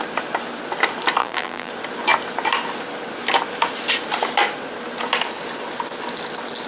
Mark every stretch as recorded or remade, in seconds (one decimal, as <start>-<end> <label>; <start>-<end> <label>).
0.0-1.2 recorded; 1.2-1.7 remade; 1.7-6.7 recorded